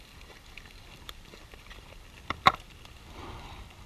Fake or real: fake